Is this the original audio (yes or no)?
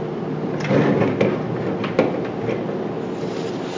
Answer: yes